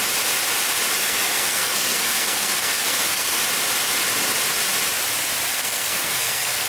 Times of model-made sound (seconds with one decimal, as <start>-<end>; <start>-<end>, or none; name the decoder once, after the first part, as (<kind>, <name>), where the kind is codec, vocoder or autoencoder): 1.0-3.4 (codec, SNAC); 5.5-6.7